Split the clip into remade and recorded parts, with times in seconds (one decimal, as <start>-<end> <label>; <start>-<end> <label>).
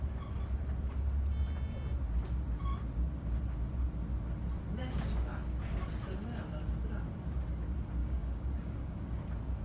0.0-4.8 recorded; 4.8-5.3 remade; 5.3-8.0 recorded; 8.0-9.2 remade; 9.2-9.6 recorded